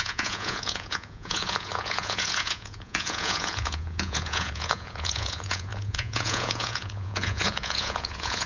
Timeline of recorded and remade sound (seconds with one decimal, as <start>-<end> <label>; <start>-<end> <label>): 0.0-8.5 remade